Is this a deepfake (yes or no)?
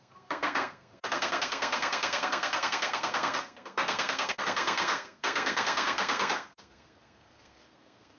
yes